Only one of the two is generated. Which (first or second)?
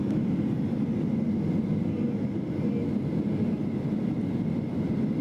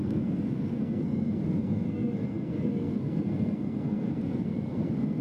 second